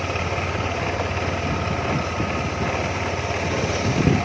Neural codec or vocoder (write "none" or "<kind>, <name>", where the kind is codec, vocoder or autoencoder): none